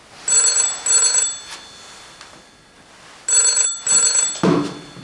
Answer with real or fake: real